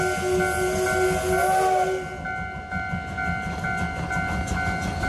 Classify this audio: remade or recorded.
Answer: recorded